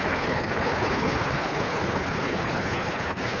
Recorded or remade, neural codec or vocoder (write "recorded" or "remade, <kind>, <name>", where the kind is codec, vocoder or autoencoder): remade, codec, HILCodec